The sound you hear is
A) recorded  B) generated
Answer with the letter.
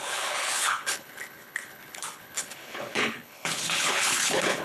B